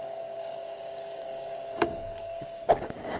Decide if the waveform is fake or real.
fake